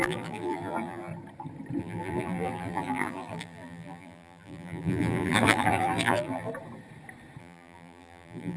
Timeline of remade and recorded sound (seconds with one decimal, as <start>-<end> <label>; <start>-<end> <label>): 0.0-1.1 remade; 1.1-1.8 recorded; 1.8-6.5 remade; 6.5-7.4 recorded; 7.4-8.6 remade